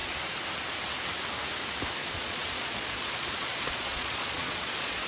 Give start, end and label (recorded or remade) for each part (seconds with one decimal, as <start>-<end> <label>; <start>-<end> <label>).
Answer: 0.0-2.0 recorded; 2.0-5.1 remade